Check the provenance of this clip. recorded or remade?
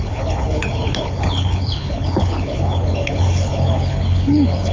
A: remade